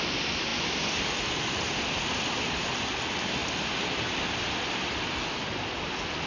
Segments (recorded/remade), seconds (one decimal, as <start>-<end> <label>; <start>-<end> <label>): 0.0-0.5 remade; 0.5-1.6 recorded; 1.6-6.3 remade